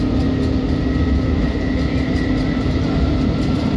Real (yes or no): yes